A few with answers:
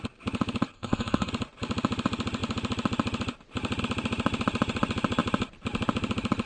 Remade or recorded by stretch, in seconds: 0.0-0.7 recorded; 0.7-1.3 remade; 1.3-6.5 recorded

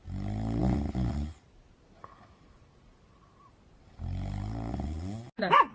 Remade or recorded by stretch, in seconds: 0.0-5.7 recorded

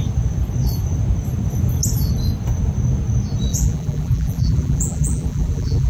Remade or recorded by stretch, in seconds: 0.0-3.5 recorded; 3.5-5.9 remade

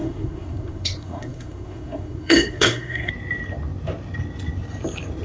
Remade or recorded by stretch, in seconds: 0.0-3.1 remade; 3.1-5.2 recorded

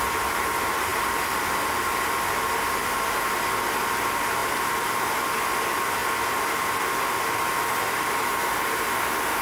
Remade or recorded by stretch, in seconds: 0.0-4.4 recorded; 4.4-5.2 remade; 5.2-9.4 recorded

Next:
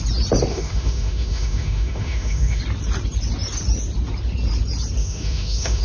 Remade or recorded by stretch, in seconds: 0.0-0.5 recorded; 0.5-2.6 remade; 2.6-5.0 recorded; 5.0-5.8 remade

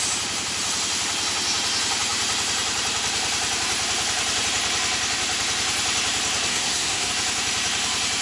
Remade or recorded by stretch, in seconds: 0.0-6.5 recorded; 6.5-7.1 remade; 7.1-8.2 recorded

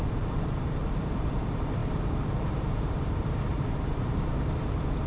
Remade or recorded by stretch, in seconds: 0.0-5.1 remade